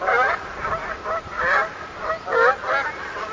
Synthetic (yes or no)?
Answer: no